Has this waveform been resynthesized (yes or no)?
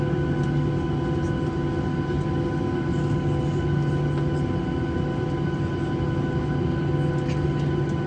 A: no